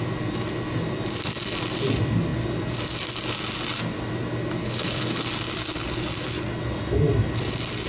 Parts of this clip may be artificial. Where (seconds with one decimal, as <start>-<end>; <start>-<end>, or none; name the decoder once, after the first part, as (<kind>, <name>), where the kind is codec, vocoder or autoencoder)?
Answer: 4.6-5.3 (codec, HILCodec)